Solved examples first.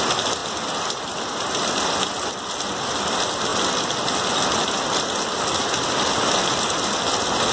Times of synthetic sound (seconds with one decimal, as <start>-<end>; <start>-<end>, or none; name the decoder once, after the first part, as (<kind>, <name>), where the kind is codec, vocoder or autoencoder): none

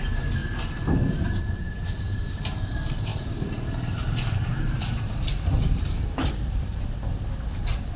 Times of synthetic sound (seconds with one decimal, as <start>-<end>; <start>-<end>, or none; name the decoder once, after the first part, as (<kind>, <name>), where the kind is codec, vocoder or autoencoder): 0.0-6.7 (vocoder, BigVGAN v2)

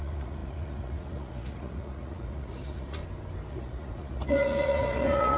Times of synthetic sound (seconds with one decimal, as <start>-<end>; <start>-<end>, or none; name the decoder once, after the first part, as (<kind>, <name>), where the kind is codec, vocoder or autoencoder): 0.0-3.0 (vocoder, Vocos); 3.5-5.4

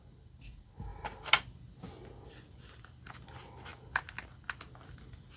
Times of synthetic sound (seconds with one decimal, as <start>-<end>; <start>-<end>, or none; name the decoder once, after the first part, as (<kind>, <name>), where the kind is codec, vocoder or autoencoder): none

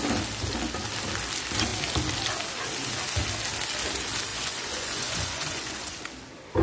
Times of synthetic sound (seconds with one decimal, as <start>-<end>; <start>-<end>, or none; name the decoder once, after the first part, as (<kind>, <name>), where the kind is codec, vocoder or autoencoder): 4.3-6.0 (vocoder, Vocos)

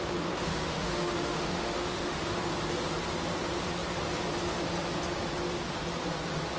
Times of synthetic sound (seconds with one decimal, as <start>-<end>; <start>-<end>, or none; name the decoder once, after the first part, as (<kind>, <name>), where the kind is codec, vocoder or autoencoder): 0.5-2.2 (autoencoder, DAC-VAE)

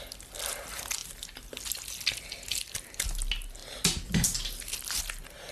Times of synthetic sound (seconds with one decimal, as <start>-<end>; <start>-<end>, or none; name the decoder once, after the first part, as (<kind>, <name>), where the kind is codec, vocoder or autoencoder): none

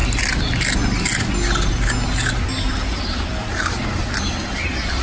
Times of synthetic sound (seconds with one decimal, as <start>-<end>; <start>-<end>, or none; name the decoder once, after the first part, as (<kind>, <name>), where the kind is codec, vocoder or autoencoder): none